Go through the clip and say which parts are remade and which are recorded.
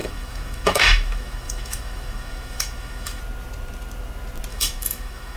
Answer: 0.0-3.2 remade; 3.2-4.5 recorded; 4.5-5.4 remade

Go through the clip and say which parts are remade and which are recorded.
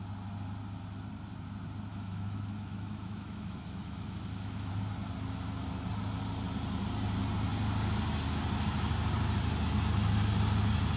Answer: 0.0-1.9 recorded; 1.9-4.7 remade; 4.7-11.0 recorded